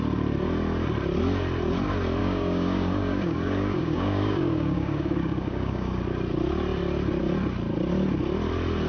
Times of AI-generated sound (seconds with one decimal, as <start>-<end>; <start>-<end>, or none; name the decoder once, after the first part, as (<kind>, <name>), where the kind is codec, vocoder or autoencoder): 2.2-6.0 (codec, DAC)